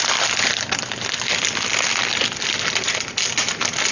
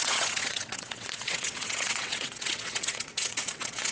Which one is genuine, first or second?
first